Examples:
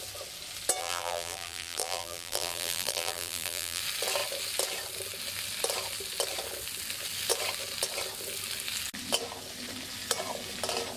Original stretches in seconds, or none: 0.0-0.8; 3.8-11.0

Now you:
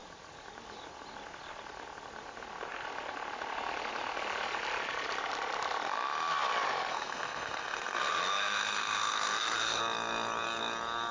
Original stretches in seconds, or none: 0.0-6.9; 9.8-11.1